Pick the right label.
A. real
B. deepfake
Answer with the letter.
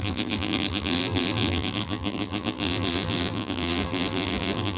B